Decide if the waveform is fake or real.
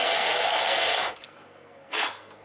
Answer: fake